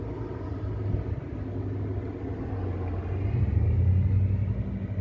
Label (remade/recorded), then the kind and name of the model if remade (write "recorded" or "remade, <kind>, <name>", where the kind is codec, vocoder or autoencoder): recorded